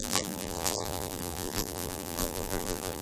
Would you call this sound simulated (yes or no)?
yes